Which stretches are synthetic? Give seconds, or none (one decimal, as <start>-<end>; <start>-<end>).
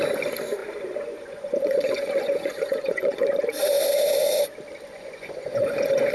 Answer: 0.6-3.4; 4.9-6.1